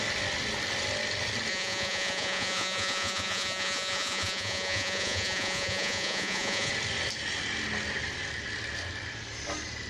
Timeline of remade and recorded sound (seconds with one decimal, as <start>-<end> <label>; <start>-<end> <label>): 0.0-1.5 recorded; 1.5-6.7 remade; 6.7-9.9 recorded